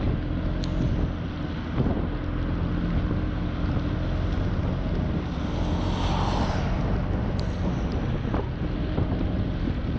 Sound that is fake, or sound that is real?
real